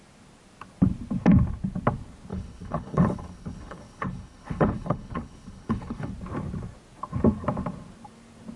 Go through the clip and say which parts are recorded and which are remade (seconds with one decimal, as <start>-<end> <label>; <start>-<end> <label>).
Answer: 0.0-2.3 recorded; 2.3-6.1 remade; 6.1-8.6 recorded